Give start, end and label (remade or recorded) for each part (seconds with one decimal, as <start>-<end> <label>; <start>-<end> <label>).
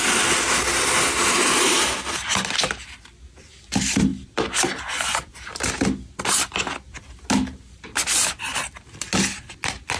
0.0-10.0 recorded